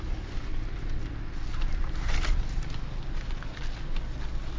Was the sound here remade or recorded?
recorded